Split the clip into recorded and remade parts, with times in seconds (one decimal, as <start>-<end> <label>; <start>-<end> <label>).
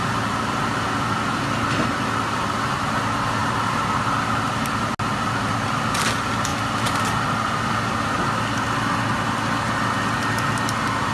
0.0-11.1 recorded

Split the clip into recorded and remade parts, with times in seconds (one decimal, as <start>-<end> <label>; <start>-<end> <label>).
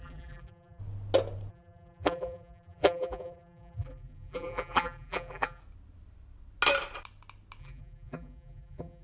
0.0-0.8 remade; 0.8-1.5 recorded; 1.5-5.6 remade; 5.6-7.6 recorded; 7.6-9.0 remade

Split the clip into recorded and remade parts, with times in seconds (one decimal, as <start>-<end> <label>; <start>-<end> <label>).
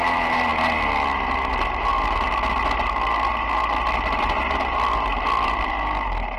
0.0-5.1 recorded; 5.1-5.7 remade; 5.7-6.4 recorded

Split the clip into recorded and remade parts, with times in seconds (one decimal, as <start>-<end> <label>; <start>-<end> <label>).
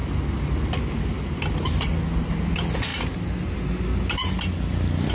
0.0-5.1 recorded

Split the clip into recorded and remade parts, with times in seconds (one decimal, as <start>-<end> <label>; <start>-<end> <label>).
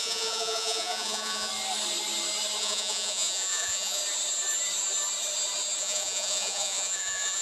0.0-1.5 remade; 1.5-2.6 recorded; 2.6-4.0 remade; 4.0-5.8 recorded; 5.8-7.4 remade